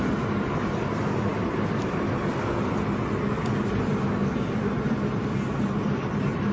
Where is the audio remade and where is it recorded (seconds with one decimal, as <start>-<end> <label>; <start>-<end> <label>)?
0.0-6.5 recorded